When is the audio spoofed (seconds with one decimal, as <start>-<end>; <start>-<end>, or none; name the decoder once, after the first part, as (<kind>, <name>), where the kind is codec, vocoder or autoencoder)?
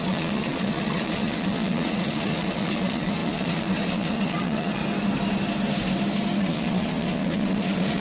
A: 0.0-4.8 (vocoder, Vocos); 6.4-8.0